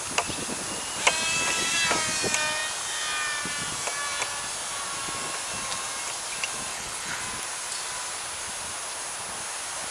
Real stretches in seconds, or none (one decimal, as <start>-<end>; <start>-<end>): 0.0-6.7; 7.2-9.9